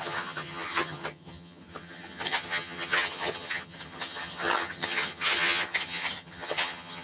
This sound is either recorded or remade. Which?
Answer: remade